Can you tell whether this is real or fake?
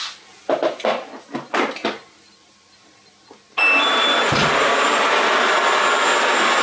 real